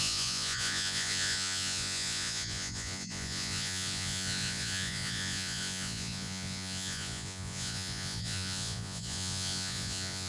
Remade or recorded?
remade